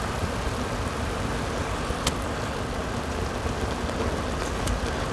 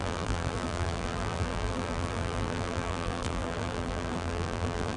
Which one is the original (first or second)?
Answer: first